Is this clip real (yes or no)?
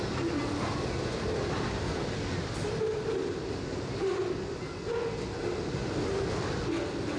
yes